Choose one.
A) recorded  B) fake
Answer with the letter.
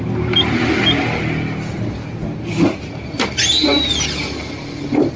A